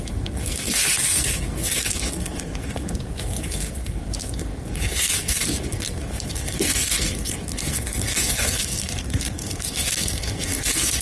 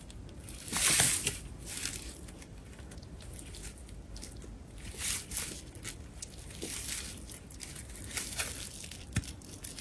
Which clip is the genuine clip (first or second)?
second